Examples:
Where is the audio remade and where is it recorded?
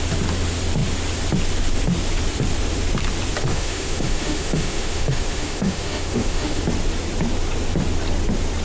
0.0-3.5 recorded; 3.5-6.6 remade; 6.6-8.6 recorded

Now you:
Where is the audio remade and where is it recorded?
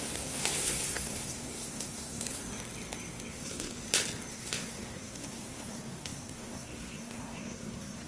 0.0-2.4 remade; 2.4-3.3 recorded; 3.3-3.7 remade; 3.7-4.3 recorded; 4.3-8.1 remade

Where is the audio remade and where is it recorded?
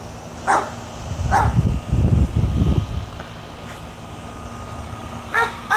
0.0-4.8 recorded; 4.8-5.8 remade